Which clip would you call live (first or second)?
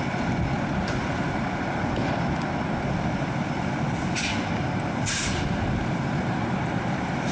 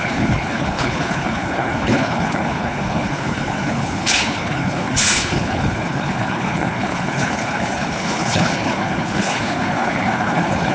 first